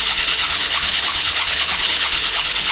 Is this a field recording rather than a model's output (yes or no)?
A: no